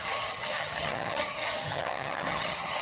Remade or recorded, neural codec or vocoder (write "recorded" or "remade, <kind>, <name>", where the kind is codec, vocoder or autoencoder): remade, vocoder, HiFi-GAN